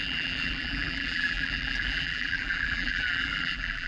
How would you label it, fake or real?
fake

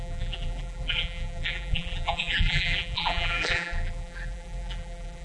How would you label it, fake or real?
fake